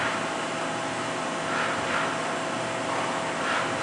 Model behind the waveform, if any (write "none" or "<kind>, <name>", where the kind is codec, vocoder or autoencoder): none